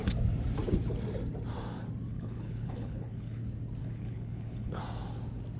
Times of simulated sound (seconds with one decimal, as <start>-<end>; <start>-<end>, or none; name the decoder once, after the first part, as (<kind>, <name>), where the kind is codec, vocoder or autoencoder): 2.1-3.4 (codec, HILCodec); 3.8-4.8